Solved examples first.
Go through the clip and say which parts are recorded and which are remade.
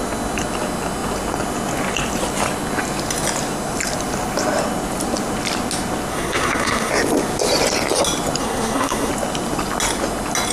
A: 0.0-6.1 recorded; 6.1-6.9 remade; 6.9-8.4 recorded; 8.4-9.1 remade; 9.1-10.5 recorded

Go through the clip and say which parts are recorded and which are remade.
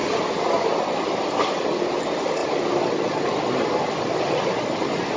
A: 0.0-5.2 recorded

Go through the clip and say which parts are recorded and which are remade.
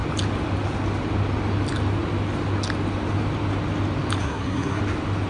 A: 0.0-4.2 recorded; 4.2-4.8 remade; 4.8-5.3 recorded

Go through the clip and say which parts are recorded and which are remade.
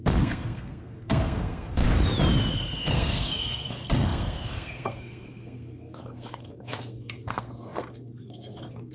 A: 0.0-1.8 remade; 1.8-2.5 recorded; 2.5-8.9 remade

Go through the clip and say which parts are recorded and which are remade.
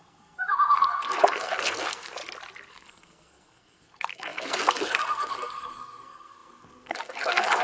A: 0.0-2.2 remade; 2.2-2.7 recorded; 2.7-7.6 remade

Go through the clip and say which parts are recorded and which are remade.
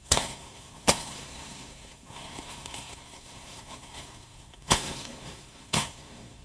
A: 0.0-6.4 remade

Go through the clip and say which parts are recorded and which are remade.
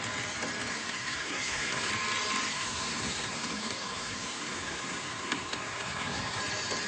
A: 0.0-0.7 recorded; 0.7-1.9 remade; 1.9-2.5 recorded; 2.5-6.4 remade; 6.4-6.9 recorded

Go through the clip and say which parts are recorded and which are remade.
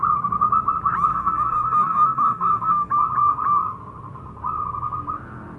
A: 0.0-1.1 recorded; 1.1-2.9 remade; 2.9-5.6 recorded